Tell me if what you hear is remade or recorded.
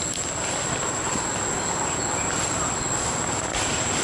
recorded